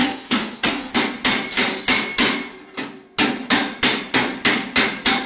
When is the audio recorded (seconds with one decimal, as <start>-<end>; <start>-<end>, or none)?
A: 1.0-5.3